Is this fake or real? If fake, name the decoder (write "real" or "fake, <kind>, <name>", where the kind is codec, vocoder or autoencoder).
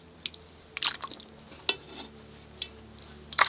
real